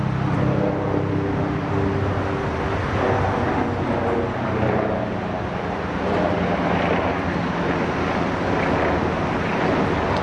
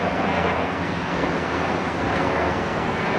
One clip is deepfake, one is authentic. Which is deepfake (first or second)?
second